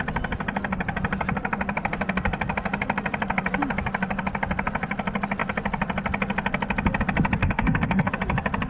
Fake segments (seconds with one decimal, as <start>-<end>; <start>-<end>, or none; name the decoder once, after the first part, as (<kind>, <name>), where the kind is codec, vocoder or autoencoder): 7.4-8.1 (codec, SNAC)